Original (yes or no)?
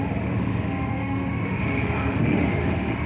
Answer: no